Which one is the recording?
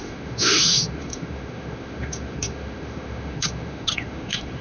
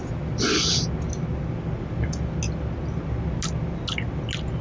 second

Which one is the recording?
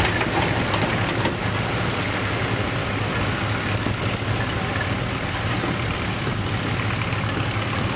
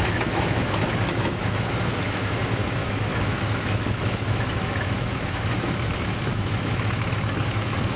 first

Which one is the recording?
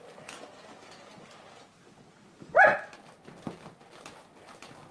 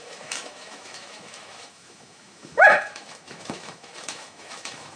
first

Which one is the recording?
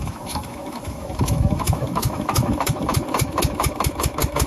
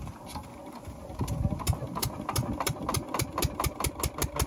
second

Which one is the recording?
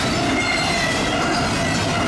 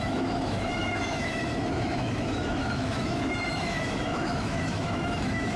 first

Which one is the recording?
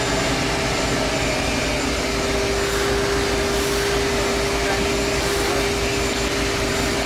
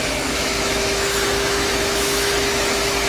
first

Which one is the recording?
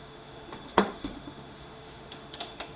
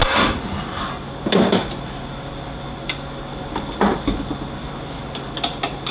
second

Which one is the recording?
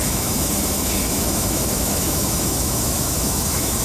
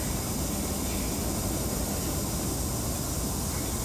second